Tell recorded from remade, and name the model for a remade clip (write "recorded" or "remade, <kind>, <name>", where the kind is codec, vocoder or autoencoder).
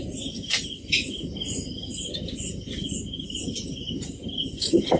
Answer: recorded